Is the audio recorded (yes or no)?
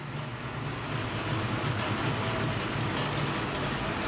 yes